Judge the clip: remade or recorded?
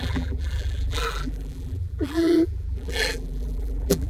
remade